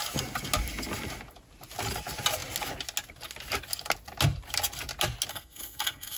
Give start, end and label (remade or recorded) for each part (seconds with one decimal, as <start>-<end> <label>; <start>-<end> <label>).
0.0-5.3 recorded; 5.3-6.2 remade